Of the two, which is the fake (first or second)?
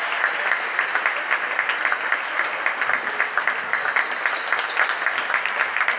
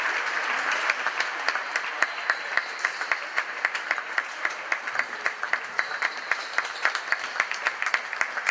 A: second